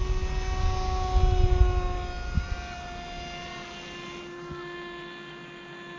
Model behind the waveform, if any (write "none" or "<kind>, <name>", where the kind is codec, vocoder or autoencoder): none